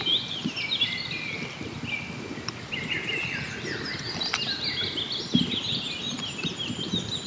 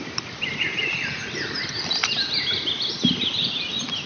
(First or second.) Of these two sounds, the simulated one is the second